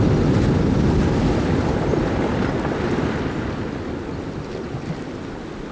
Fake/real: real